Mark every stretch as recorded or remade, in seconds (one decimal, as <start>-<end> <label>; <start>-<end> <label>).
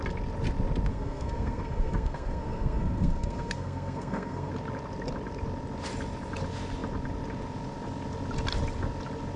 0.0-0.9 recorded; 0.9-4.5 remade; 4.5-9.4 recorded